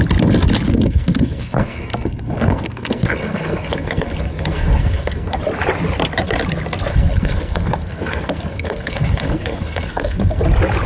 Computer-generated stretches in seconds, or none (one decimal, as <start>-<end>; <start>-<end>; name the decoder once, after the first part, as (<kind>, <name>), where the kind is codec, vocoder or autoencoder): 0.7-5.4 (codec, SNAC); 6.9-10.4